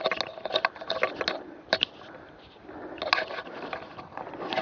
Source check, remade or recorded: recorded